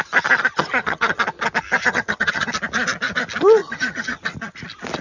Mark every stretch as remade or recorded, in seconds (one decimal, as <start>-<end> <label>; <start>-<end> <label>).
0.0-0.5 recorded; 0.5-1.2 remade; 1.2-1.8 recorded; 1.8-2.5 remade; 2.5-3.6 recorded; 3.6-4.2 remade; 4.2-5.0 recorded

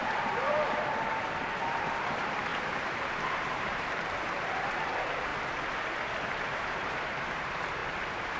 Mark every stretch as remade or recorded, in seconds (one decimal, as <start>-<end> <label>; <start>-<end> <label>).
0.0-2.5 remade; 2.5-3.0 recorded; 3.0-5.3 remade; 5.3-6.3 recorded; 6.3-8.4 remade

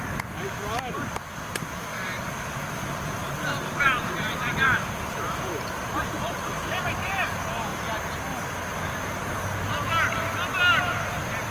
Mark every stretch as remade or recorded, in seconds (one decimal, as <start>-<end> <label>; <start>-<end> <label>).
0.0-1.9 recorded; 1.9-6.8 remade; 6.8-11.5 recorded

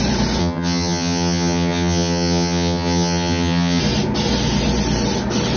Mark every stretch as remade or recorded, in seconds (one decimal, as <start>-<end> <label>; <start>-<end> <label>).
0.0-0.4 recorded; 0.4-3.8 remade; 3.8-5.6 recorded